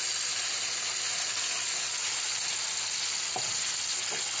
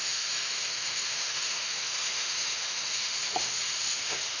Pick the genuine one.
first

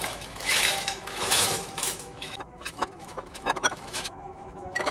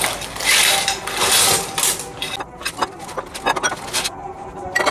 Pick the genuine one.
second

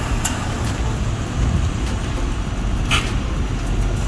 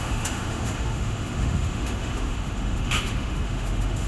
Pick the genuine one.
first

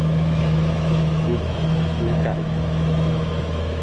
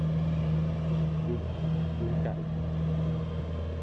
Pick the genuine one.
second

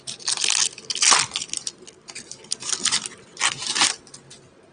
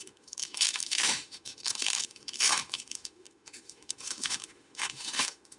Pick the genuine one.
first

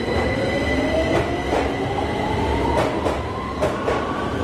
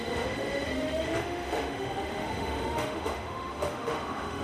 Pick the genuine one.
first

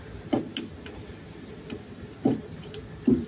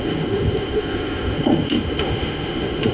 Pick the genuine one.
first